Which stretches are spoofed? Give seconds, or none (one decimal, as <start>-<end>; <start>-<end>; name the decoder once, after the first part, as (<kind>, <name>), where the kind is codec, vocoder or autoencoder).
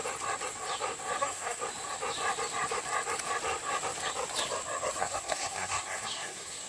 1.2-1.6 (codec, SNAC); 5.0-6.7